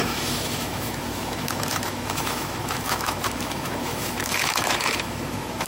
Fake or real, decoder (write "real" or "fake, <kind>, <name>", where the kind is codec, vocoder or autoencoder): fake, autoencoder, DAC-VAE